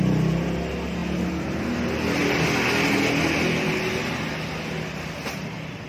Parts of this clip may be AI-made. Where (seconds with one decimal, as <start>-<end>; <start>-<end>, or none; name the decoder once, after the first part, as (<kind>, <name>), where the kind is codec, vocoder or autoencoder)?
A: none